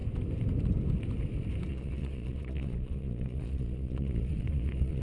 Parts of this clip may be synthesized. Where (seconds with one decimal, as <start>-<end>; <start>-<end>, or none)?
1.7-5.0

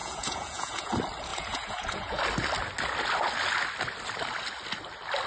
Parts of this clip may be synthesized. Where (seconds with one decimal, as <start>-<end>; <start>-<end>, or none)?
0.0-0.9; 1.3-2.2

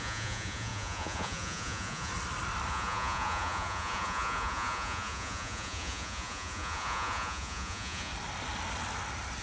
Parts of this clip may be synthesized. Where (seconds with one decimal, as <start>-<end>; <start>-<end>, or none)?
0.0-2.1; 2.7-8.1

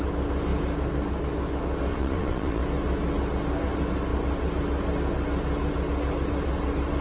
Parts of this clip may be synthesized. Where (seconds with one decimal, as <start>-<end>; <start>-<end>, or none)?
1.9-2.6

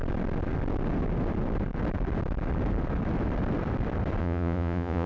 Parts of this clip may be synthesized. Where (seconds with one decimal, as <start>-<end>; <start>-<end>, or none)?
4.2-5.1